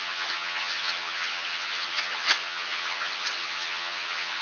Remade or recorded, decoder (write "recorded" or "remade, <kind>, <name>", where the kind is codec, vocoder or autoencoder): remade, vocoder, HiFi-GAN